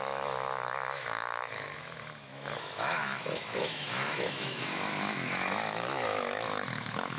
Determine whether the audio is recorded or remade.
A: remade